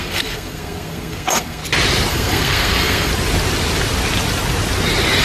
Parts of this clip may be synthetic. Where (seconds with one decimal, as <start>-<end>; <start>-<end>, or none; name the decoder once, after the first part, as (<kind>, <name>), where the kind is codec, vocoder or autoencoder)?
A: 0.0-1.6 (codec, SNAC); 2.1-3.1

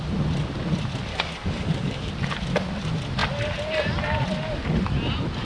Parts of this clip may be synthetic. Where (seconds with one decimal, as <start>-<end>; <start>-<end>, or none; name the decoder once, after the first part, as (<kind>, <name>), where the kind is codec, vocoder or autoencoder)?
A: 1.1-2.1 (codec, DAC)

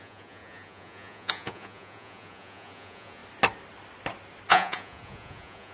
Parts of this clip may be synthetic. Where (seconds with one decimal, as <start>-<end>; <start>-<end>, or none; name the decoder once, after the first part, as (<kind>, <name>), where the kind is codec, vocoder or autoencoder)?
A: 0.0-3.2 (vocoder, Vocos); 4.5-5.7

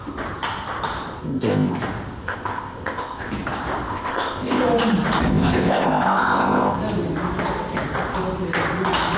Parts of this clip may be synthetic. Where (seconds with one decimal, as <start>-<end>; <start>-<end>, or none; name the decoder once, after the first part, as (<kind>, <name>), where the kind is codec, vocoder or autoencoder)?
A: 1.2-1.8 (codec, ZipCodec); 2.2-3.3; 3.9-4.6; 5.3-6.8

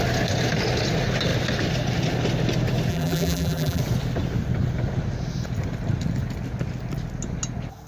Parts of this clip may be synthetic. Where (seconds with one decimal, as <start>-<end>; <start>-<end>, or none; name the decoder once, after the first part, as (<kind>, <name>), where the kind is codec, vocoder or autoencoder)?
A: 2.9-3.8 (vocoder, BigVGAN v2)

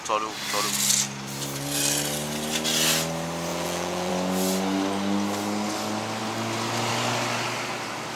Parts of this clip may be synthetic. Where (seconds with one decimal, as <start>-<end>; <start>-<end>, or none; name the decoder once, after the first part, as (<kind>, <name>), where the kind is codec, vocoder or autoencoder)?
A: 3.5-4.1 (vocoder, Vocos)